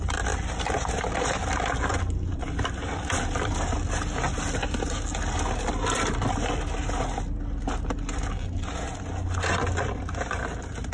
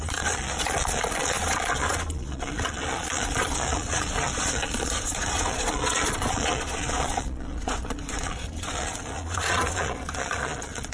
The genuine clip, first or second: first